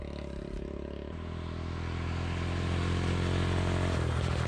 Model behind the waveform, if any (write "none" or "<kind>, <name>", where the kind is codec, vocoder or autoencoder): none